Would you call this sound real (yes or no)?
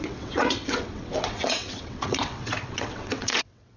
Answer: no